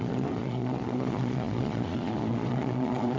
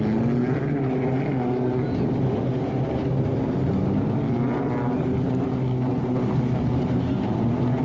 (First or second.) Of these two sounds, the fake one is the first